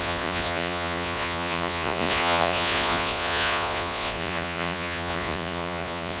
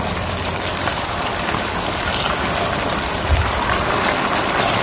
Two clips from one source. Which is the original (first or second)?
second